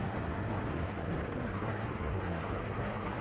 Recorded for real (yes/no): no